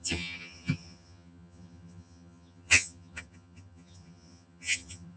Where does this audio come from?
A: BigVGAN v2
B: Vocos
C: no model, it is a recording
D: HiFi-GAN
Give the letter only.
D